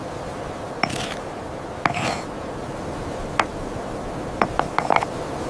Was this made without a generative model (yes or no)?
yes